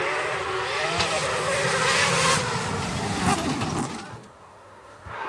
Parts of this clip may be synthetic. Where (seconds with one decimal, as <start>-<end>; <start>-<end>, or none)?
4.1-5.3